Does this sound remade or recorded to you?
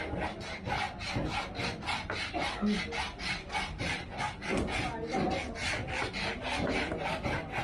recorded